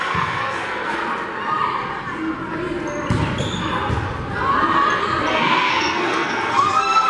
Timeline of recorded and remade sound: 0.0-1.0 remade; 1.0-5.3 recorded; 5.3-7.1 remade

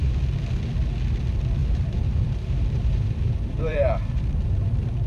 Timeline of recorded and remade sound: 0.0-1.6 recorded; 1.6-5.1 remade

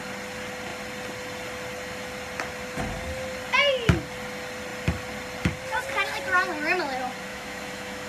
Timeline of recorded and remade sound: 0.0-7.3 recorded; 7.3-8.1 remade

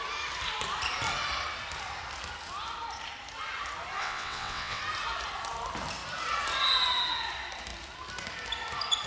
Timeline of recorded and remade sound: 0.0-4.0 recorded; 4.0-4.8 remade; 4.8-9.1 recorded

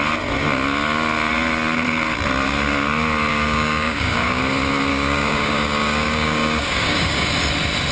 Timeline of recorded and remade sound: 0.0-3.3 recorded; 3.3-4.4 remade; 4.4-4.9 recorded; 4.9-7.3 remade; 7.3-7.9 recorded

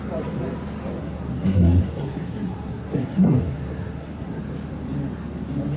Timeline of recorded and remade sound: 0.0-1.0 recorded; 1.0-4.4 remade; 4.4-5.8 recorded

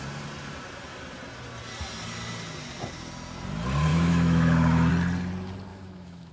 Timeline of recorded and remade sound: 0.0-3.9 recorded; 3.9-4.9 remade; 4.9-5.7 recorded; 5.7-6.3 remade

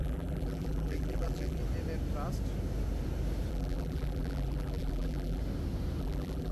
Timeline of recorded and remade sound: 0.0-1.6 remade; 1.6-3.5 recorded; 3.5-5.4 remade; 5.4-6.0 recorded; 6.0-6.5 remade